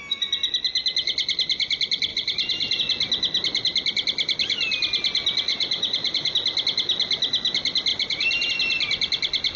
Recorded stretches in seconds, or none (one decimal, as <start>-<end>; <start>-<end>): 0.0-2.1; 2.8-5.5; 6.3-7.9; 8.5-9.6